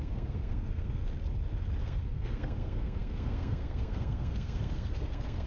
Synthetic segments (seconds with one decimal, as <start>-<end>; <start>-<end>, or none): 0.0-1.0; 1.8-5.5